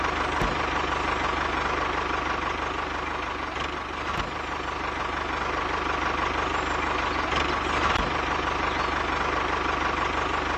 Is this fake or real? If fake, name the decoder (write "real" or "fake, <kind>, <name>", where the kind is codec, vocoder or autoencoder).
real